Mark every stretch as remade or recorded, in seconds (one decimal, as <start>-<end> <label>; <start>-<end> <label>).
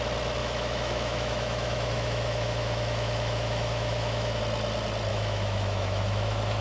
0.0-0.4 recorded; 0.4-4.4 remade; 4.4-5.1 recorded; 5.1-6.6 remade